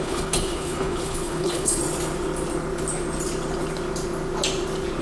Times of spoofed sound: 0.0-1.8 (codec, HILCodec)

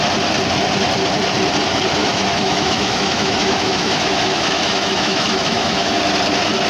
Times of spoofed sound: 2.0-6.0 (autoencoder, DAC-VAE)

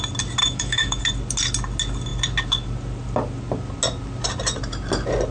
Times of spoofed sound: 0.4-1.0 (autoencoder, DAC-VAE)

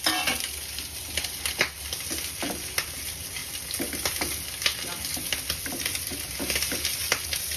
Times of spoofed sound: none

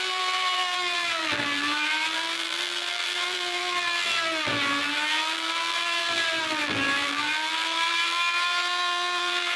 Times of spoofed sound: 0.0-9.6 (vocoder, BigVGAN v2)